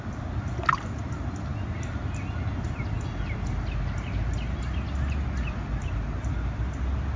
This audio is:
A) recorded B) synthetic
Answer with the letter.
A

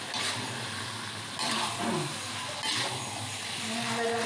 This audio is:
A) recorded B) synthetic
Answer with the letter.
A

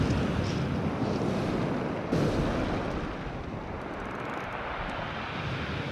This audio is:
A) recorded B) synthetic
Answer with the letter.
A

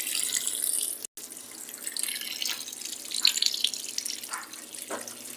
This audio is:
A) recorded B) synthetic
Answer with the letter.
A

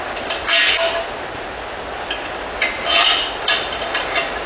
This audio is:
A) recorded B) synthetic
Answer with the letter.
A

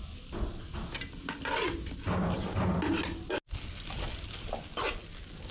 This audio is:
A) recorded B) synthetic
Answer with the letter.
A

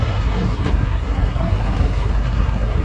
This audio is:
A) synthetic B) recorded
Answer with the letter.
A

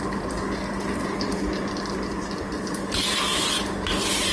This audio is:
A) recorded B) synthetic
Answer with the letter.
A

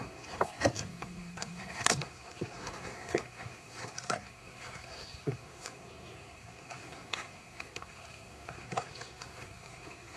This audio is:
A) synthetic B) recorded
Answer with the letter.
A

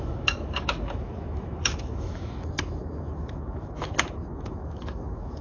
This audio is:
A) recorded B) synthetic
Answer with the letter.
B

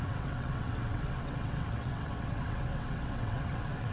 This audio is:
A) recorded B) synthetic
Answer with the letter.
B